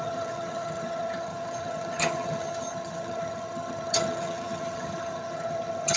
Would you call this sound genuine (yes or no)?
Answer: no